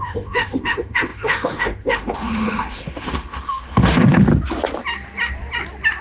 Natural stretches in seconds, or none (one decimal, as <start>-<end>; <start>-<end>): 4.3-6.0